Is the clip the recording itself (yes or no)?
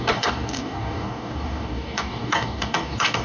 no